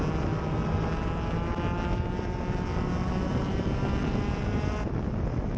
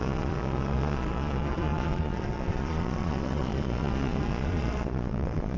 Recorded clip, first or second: first